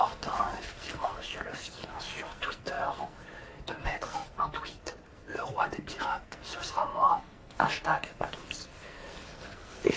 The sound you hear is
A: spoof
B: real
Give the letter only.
A